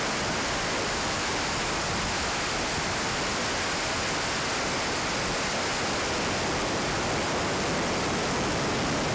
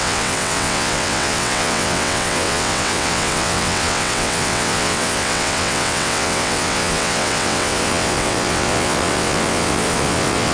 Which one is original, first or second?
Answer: first